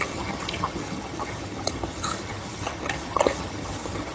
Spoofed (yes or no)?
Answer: yes